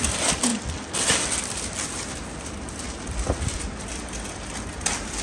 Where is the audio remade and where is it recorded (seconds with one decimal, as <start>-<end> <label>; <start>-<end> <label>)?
0.0-5.2 recorded